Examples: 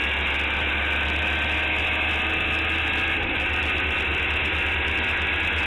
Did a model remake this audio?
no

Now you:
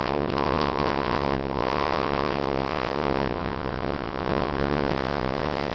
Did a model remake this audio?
yes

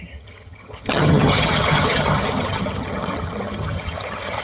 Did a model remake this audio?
yes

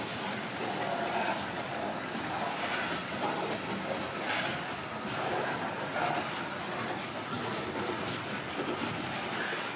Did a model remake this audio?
no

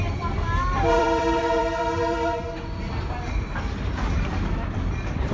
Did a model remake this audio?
yes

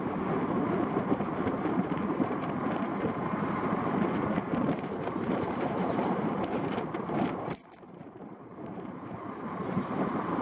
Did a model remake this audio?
yes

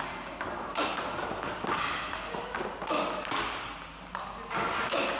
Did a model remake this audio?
no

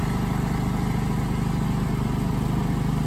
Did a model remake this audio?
no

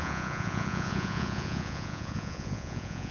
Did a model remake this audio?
yes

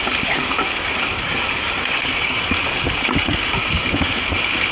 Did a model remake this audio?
no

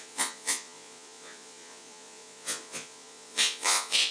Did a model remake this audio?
yes